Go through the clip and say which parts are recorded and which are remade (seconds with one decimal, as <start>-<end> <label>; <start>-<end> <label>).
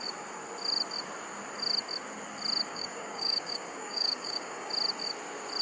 0.0-2.7 recorded; 2.7-4.7 remade; 4.7-5.6 recorded